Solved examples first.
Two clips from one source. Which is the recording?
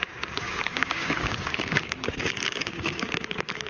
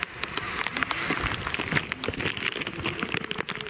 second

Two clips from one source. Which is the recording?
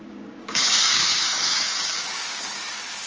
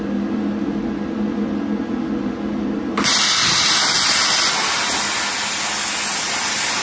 second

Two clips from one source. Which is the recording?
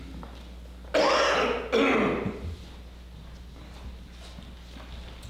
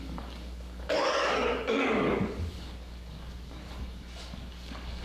first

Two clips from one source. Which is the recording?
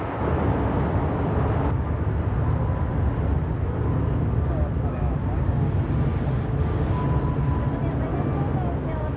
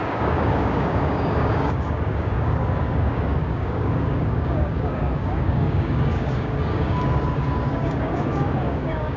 first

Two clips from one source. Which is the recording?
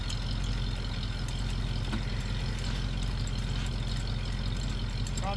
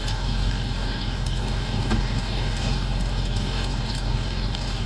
first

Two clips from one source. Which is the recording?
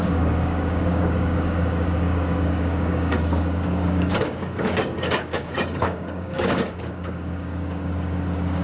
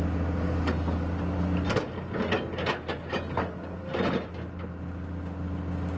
second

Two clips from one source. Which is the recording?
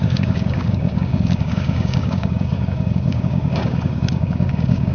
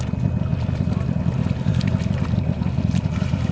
second